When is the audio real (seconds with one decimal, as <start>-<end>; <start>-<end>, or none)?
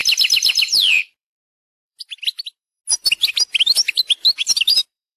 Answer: 2.8-3.4